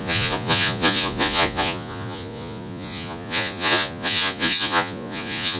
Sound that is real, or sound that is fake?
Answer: fake